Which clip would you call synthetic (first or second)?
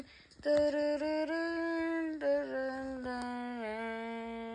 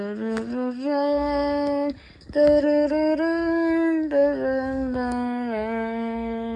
second